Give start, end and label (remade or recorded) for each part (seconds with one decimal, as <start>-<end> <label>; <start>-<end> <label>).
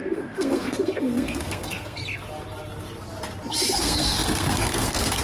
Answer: 0.0-2.0 remade; 2.0-3.8 recorded; 3.8-5.2 remade